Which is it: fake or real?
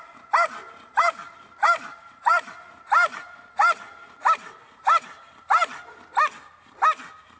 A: real